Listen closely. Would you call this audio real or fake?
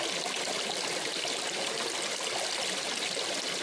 real